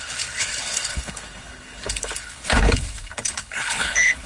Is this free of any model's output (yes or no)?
no